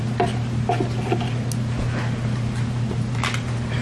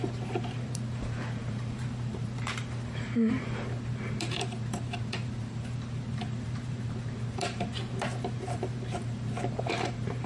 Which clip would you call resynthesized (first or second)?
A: second